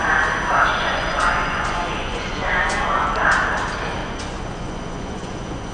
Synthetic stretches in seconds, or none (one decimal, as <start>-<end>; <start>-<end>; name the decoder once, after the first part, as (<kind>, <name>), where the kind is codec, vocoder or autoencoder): 0.7-3.1 (vocoder, Vocos); 4.0-5.7